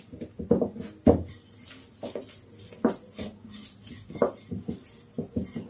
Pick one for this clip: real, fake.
real